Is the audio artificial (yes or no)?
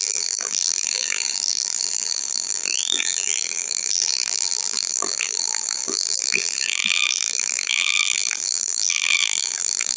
yes